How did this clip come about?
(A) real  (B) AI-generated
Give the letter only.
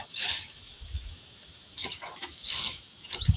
B